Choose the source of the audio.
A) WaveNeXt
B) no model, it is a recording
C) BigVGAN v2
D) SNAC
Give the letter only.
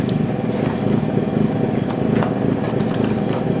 B